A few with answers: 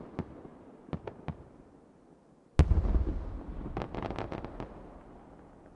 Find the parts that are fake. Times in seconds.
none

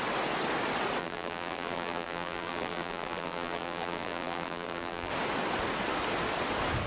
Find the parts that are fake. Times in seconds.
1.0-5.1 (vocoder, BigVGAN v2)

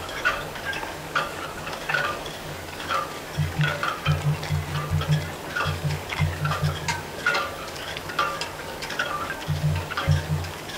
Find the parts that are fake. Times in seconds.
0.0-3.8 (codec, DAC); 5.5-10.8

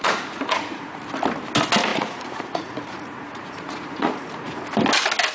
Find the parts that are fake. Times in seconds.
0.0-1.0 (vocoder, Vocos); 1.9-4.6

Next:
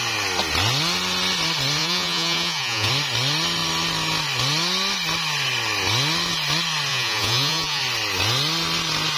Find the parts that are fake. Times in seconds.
1.8-2.9 (vocoder, Vocos); 6.9-7.8

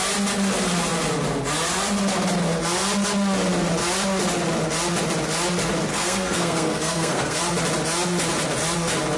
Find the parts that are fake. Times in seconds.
5.9-7.4 (codec, SNAC)